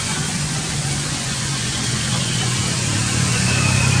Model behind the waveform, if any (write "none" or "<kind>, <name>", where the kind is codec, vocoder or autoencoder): vocoder, Vocos